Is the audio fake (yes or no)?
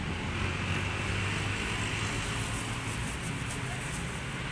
no